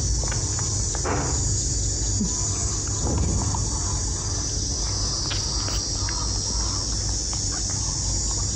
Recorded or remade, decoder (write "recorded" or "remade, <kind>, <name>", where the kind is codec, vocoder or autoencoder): recorded